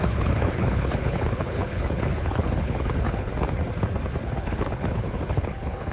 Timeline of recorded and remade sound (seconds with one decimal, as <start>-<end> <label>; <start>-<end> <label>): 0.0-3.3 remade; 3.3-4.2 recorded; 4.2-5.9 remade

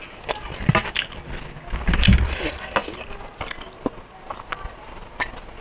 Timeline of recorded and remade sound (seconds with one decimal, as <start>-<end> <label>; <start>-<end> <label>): 0.0-5.6 recorded

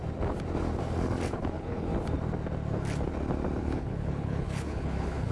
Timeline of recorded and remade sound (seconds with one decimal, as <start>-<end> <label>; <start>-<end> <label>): 0.0-1.3 recorded; 1.3-1.9 remade; 1.9-3.6 recorded; 3.6-5.3 remade

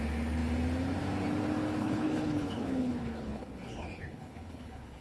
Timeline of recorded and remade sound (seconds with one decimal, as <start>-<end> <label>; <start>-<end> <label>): 0.0-1.8 recorded; 1.8-5.0 remade